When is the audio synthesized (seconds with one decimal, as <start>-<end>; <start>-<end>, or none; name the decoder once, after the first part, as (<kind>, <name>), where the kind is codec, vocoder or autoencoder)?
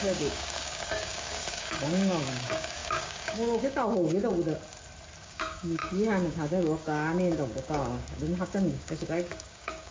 0.0-4.3 (codec, DAC); 5.2-9.9